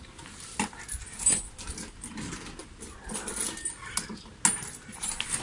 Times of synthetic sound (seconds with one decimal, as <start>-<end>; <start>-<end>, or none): none